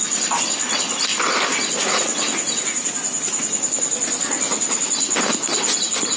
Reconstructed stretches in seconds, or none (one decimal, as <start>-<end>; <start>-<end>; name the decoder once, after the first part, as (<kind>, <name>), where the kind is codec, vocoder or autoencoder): none